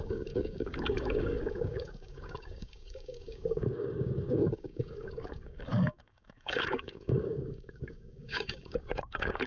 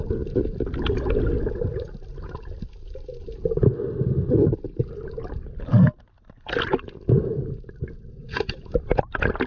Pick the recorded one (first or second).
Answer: second